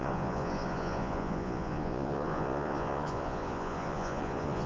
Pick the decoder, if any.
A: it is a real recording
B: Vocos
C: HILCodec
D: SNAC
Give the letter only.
B